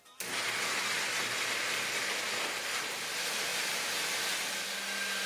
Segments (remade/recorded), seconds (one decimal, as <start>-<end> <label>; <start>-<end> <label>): 0.0-5.3 recorded